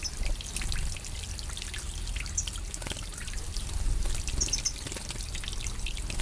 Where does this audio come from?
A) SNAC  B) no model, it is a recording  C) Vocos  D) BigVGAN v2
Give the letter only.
B